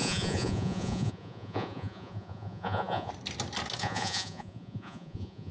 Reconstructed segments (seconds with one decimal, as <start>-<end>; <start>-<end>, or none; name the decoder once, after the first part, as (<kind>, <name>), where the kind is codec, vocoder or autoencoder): 0.0-3.1 (vocoder, Vocos); 3.8-5.5